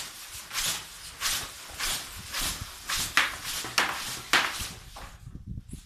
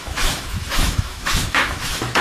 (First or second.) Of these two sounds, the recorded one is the first